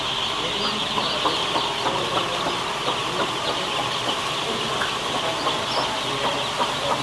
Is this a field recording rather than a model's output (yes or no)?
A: yes